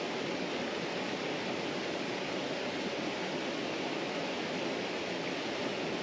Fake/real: real